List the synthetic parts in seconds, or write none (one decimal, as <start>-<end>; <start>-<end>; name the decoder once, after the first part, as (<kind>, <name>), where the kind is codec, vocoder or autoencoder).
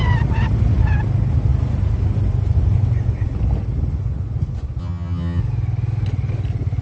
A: 4.8-5.4 (vocoder, HiFi-GAN)